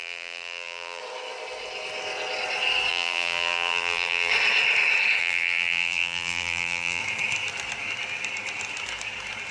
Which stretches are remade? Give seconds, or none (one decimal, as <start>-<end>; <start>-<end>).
0.0-1.0; 2.9-4.3; 5.2-7.0